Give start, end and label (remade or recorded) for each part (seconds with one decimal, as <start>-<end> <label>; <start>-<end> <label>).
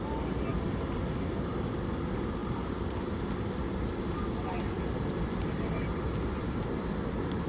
0.0-7.5 recorded